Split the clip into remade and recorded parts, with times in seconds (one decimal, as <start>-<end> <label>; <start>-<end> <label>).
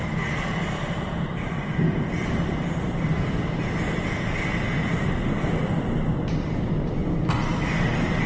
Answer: 0.0-3.8 remade; 3.8-4.9 recorded; 4.9-6.1 remade; 6.1-8.3 recorded